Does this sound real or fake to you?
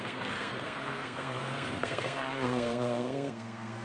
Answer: fake